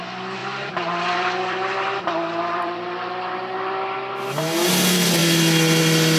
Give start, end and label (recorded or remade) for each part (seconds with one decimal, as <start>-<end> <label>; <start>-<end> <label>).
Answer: 0.0-0.4 recorded; 0.4-4.1 remade; 4.1-6.2 recorded